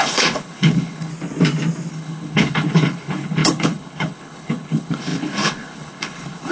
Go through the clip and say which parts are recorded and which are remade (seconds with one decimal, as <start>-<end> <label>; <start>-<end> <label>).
0.0-1.1 remade; 1.1-1.9 recorded; 1.9-6.5 remade